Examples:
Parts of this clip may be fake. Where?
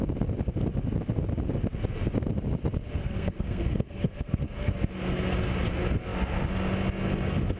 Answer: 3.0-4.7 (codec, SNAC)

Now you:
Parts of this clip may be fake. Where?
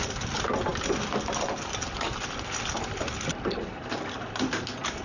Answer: none